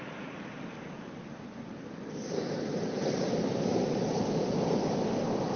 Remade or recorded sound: recorded